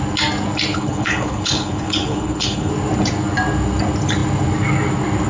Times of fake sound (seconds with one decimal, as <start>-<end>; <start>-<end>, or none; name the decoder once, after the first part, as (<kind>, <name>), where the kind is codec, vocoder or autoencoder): 0.7-2.7 (codec, HILCodec)